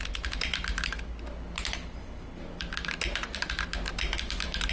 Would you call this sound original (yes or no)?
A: yes